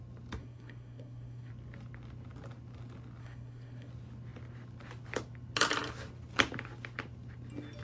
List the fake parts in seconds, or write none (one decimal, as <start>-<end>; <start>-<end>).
0.4-1.5; 3.2-3.9